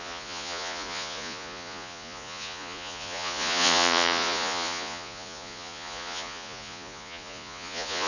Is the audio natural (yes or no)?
no